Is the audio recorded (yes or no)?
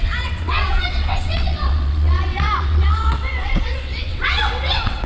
no